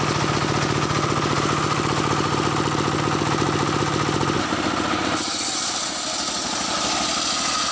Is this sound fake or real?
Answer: real